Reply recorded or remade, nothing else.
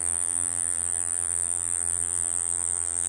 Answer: remade